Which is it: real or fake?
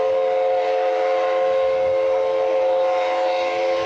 real